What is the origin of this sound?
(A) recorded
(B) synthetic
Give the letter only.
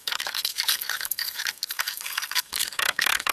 B